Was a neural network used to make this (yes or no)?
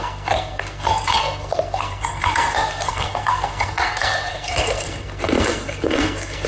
yes